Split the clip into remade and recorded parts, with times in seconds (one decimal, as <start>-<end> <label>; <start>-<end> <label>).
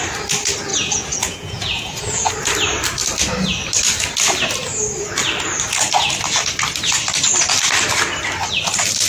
0.0-0.7 recorded; 0.7-2.3 remade; 2.3-9.1 recorded